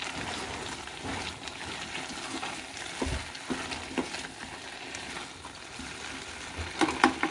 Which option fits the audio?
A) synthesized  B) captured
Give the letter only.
B